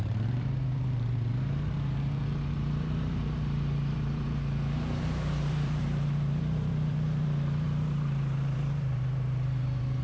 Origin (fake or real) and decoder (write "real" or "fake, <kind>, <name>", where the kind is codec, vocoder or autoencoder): fake, vocoder, BigVGAN v2